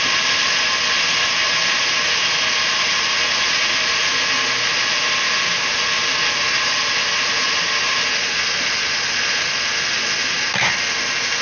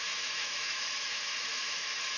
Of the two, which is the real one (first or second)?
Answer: first